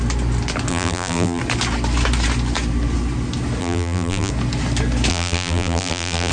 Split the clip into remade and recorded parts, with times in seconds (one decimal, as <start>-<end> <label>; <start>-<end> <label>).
0.0-0.7 recorded; 0.7-1.4 remade; 1.4-3.6 recorded; 3.6-4.3 remade; 4.3-5.1 recorded; 5.1-6.3 remade